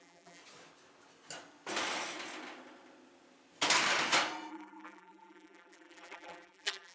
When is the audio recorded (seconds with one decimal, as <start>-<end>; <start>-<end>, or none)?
0.4-4.5